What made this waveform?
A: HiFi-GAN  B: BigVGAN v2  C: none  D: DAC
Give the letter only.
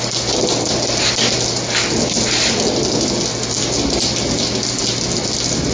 C